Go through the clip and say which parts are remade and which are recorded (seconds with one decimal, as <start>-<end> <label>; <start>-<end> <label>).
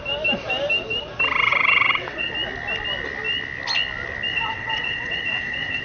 0.0-1.5 recorded; 1.5-2.3 remade; 2.3-4.3 recorded; 4.3-5.8 remade